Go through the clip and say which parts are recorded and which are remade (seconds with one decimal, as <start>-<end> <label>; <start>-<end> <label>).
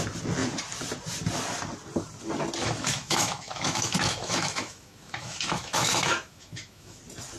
0.0-2.6 recorded; 2.6-7.0 remade; 7.0-7.4 recorded